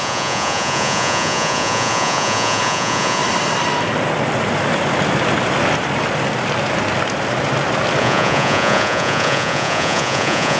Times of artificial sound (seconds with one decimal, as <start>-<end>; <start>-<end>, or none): 0.0-3.2; 8.0-10.6